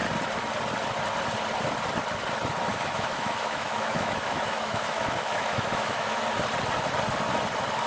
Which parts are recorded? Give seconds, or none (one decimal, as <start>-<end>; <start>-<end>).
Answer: 0.0-2.7; 6.2-7.9